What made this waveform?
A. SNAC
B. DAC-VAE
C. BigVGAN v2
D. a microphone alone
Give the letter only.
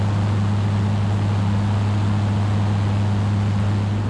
D